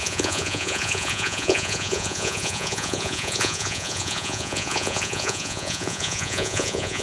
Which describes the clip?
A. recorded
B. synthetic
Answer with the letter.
B